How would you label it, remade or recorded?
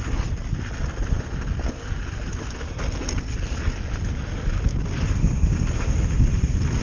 recorded